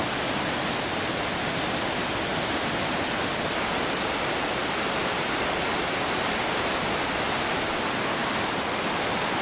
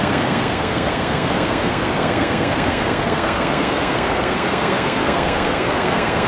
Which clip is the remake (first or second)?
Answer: second